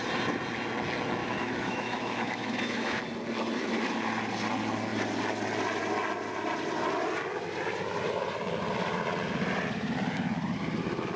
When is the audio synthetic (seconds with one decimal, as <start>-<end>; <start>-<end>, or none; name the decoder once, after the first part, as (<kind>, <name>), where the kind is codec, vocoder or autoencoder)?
1.2-3.0 (autoencoder, DAC-VAE)